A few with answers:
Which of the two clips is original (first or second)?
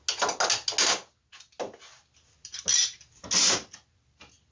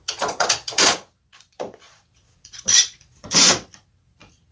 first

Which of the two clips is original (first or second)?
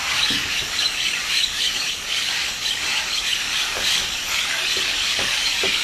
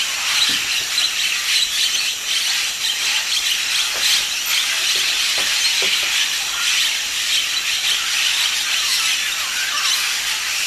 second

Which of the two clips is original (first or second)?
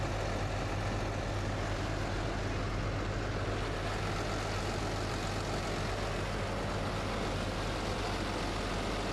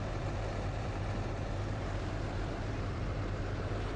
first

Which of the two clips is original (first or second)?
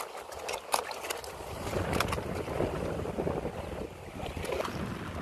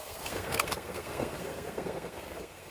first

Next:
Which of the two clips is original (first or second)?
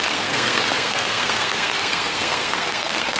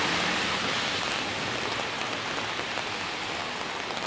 second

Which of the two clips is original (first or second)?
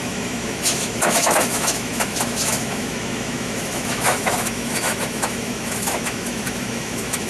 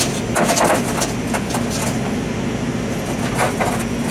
second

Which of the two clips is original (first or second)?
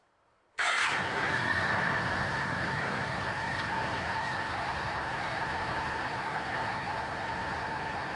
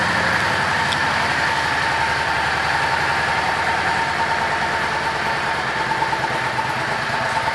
second